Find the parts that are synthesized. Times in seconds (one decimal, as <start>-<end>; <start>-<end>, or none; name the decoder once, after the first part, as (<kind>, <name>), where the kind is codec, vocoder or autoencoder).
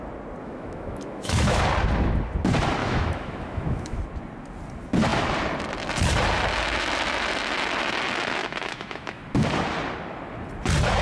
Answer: 0.4-1.6 (autoencoder, DAC-VAE); 2.8-4.0; 8.4-9.2